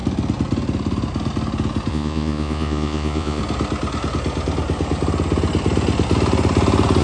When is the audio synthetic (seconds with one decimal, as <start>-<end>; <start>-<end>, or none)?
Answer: 1.9-3.4